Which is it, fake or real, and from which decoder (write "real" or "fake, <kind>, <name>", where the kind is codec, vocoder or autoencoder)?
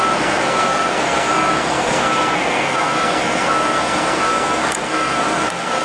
fake, codec, SNAC